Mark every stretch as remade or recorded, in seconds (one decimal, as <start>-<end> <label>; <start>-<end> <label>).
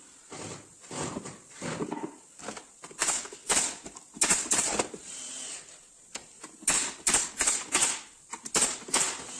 0.0-0.7 recorded; 0.7-1.9 remade; 1.9-3.4 recorded; 3.4-5.7 remade; 5.7-6.2 recorded; 6.2-7.2 remade; 7.2-9.4 recorded